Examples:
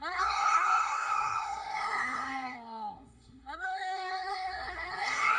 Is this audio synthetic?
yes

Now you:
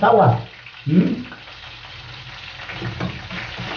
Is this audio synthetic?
no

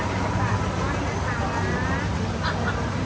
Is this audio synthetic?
no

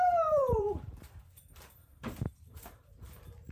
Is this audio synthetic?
yes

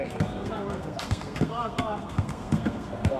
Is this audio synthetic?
yes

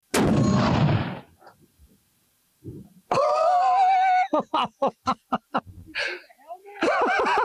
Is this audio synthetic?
no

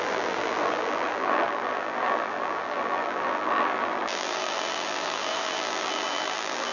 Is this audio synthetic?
yes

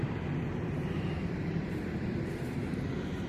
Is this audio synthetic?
yes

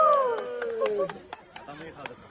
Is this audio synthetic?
yes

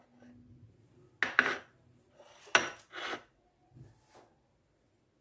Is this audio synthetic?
no